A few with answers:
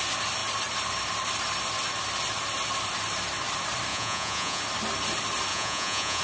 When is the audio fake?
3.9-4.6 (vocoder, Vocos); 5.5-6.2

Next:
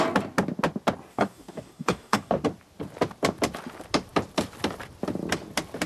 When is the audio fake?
1.1-2.3 (codec, DAC)

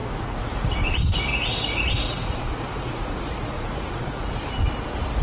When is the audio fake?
0.0-0.7 (vocoder, Vocos); 1.3-4.4

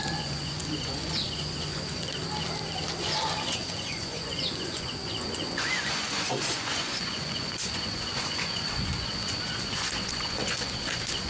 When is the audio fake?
0.0-2.2 (vocoder, Vocos); 3.0-11.3

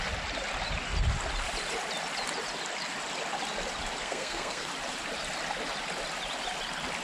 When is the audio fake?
4.0-4.7 (codec, SNAC)

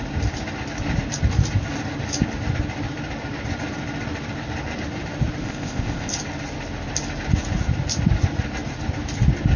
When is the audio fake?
5.4-6.1 (codec, ZipCodec)

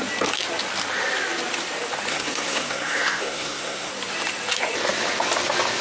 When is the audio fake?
2.1-3.9 (codec, SNAC)